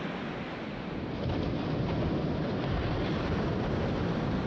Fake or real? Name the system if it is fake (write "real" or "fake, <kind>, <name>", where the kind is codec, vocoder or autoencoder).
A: real